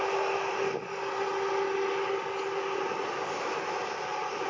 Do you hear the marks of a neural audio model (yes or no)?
no